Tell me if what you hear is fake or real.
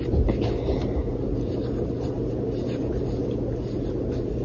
real